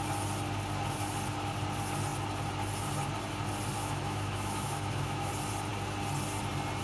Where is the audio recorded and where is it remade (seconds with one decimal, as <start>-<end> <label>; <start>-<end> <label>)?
0.0-3.8 recorded; 3.8-5.3 remade; 5.3-6.8 recorded

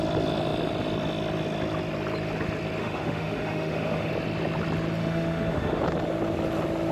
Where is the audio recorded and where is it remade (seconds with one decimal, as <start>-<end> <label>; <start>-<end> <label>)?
0.0-2.8 recorded; 2.8-4.1 remade; 4.1-5.0 recorded; 5.0-5.8 remade; 5.8-6.9 recorded